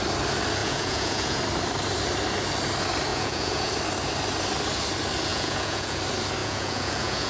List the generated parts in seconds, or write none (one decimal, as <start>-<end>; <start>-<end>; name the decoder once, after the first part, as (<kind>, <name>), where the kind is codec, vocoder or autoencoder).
0.6-1.4 (vocoder, Vocos); 3.1-3.7; 5.3-6.0; 6.4-7.3

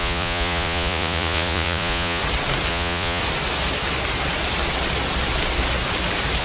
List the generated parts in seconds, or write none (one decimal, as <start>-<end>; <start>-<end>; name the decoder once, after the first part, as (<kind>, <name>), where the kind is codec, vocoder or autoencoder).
0.0-2.2 (vocoder, Vocos); 2.7-3.2

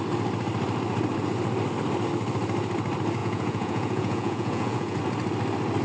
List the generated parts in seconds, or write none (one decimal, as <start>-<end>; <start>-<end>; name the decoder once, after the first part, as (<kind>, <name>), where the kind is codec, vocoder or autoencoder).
3.2-5.0 (vocoder, Vocos)

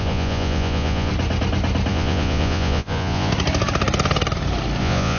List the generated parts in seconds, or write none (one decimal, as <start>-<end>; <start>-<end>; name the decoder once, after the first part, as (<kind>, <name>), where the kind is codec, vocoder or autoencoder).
0.0-1.1 (vocoder, Vocos); 1.9-3.3; 4.8-5.2

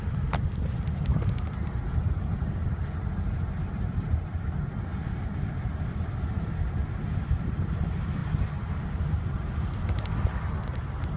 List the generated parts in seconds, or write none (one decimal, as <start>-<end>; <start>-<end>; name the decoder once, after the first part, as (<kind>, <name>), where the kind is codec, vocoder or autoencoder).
none